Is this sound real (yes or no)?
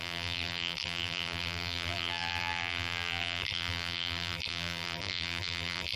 no